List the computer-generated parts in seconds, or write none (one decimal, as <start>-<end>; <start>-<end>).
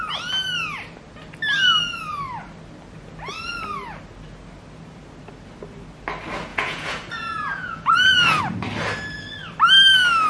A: 6.5-8.4